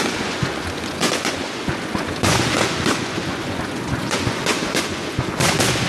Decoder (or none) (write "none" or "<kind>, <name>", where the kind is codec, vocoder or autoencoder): vocoder, Vocos